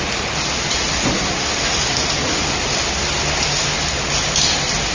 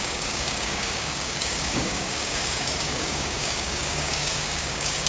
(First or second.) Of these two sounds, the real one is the first